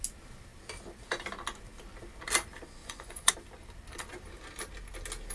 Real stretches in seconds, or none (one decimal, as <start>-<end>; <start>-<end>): 0.0-2.8; 3.3-5.3